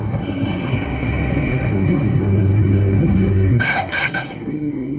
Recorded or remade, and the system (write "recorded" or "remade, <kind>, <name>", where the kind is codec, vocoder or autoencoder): remade, codec, SNAC